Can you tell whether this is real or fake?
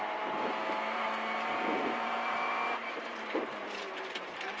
fake